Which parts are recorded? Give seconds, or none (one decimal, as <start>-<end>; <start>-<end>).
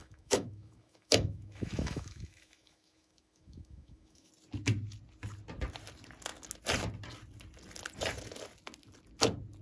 4.3-9.6